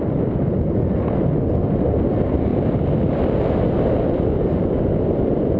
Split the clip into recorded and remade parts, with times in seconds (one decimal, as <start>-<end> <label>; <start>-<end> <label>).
0.0-5.6 recorded